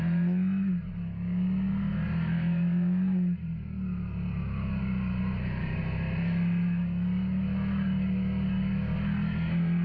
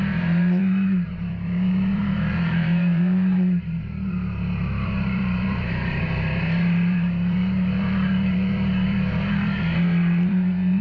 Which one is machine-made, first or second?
second